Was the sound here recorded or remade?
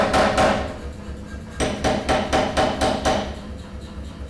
recorded